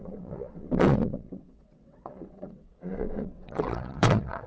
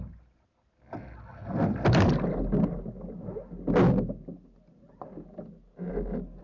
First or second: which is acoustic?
second